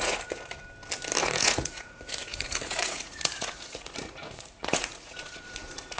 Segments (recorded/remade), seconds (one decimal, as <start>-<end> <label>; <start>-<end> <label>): 0.0-0.6 remade; 0.6-1.2 recorded; 1.2-6.0 remade